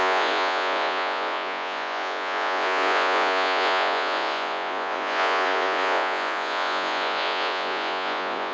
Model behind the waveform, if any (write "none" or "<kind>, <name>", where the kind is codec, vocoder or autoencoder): vocoder, Vocos